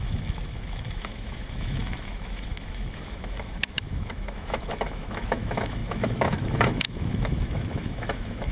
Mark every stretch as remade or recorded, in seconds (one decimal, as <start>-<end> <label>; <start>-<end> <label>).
0.0-8.5 remade